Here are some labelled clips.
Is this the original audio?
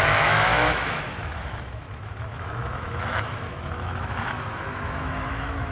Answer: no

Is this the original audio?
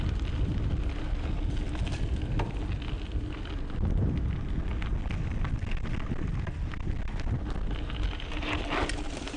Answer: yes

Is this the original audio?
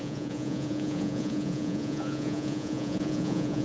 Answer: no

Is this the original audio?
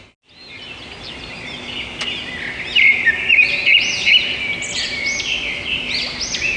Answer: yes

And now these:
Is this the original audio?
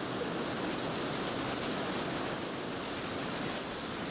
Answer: yes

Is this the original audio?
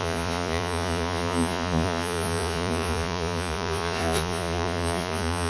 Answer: no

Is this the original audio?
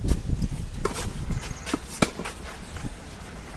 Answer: yes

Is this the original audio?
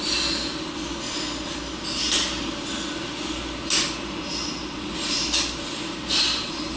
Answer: yes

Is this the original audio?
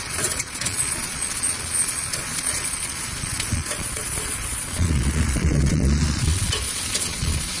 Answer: no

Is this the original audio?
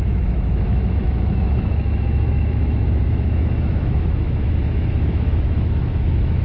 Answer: no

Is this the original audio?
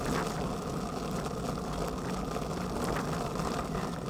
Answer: yes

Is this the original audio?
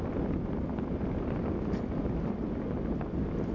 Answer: yes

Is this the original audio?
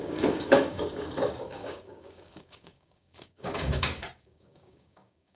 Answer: no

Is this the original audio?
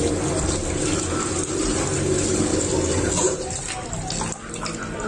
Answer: yes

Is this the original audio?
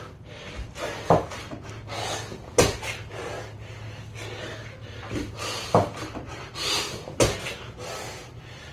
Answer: yes